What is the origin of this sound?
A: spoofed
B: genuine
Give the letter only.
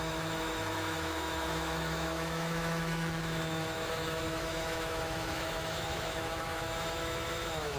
A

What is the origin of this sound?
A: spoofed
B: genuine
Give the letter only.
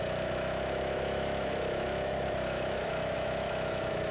A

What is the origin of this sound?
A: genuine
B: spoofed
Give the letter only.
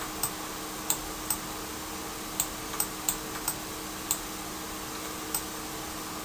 A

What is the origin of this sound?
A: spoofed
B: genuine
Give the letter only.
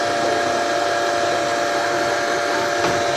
B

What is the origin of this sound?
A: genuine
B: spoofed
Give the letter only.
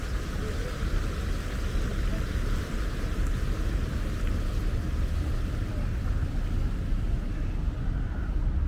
A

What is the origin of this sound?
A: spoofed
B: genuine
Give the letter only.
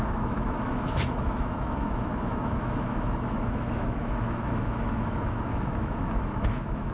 A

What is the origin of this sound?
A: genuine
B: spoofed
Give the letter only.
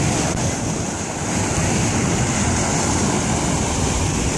A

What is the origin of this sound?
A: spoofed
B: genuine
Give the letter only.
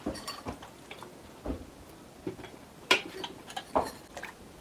B